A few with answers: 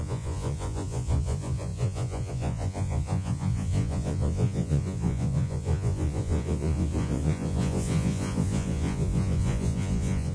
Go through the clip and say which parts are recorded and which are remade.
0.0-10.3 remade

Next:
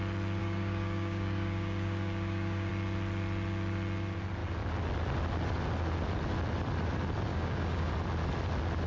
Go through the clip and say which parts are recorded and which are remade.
0.0-0.4 recorded; 0.4-2.7 remade; 2.7-7.3 recorded; 7.3-7.9 remade; 7.9-8.9 recorded

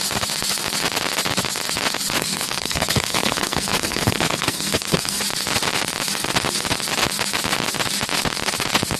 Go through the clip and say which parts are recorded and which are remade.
0.0-2.2 recorded; 2.2-5.2 remade; 5.2-9.0 recorded

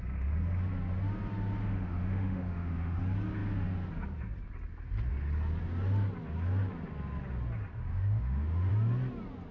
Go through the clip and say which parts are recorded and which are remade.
0.0-1.6 recorded; 1.6-3.0 remade; 3.0-7.9 recorded; 7.9-8.7 remade; 8.7-9.5 recorded